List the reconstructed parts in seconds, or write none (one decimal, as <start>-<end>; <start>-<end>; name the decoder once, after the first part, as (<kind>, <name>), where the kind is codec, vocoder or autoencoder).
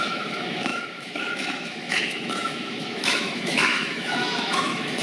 0.0-5.0 (autoencoder, DAC-VAE)